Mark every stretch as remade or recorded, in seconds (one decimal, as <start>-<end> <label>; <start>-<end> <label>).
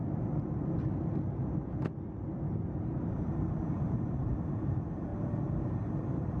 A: 0.0-3.1 recorded; 3.1-5.1 remade; 5.1-5.6 recorded; 5.6-6.4 remade